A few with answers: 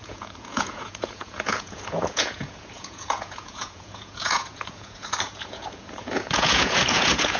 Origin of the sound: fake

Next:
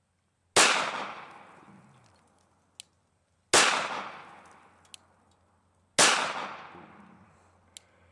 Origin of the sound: real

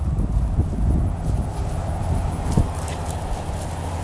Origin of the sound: real